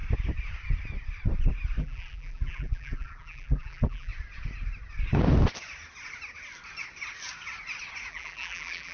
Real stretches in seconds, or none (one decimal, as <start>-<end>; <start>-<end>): 0.0-1.8; 4.1-8.1